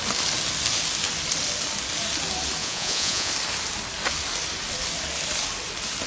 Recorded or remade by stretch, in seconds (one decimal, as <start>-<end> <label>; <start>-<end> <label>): 0.0-2.6 recorded; 2.6-3.3 remade; 3.3-6.1 recorded